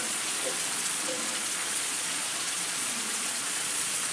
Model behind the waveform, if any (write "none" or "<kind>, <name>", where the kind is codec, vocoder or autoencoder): vocoder, Vocos